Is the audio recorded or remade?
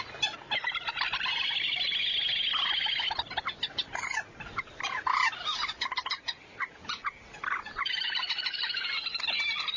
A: recorded